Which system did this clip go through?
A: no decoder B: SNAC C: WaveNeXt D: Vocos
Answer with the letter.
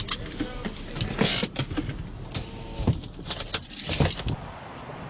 A